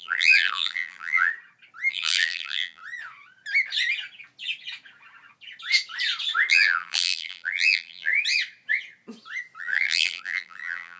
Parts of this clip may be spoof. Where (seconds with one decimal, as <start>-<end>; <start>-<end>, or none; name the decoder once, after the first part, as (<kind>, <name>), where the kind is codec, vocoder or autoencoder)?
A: 0.0-1.3 (vocoder, BigVGAN v2); 1.9-2.8; 6.5-8.1; 9.6-11.0